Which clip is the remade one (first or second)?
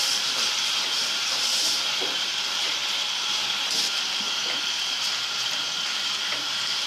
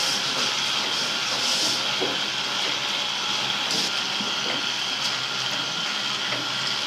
first